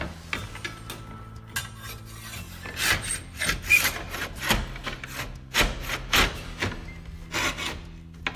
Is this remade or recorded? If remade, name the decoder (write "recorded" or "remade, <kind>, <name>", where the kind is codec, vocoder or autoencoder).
recorded